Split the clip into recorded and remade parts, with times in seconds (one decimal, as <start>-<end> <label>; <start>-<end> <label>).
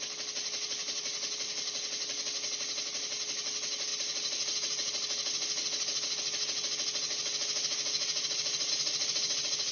0.0-9.7 recorded